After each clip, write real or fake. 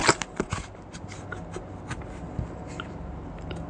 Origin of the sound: real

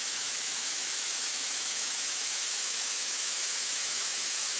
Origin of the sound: fake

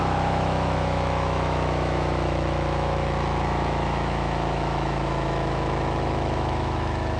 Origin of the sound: fake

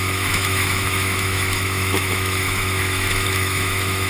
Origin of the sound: fake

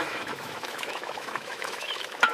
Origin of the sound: fake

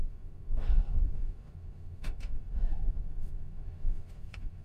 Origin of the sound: fake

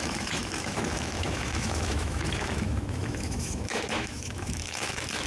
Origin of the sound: fake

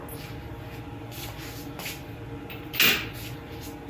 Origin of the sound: real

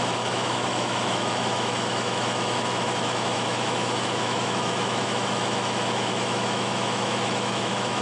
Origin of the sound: fake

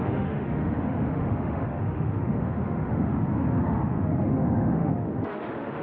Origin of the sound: fake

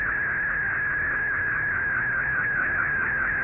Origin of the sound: fake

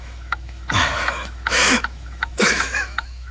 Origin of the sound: fake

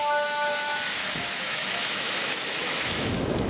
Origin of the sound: fake